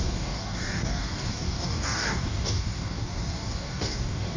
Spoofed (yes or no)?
yes